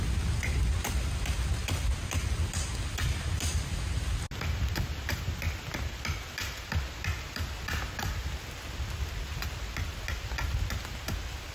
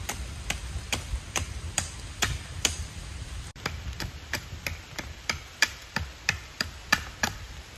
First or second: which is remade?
second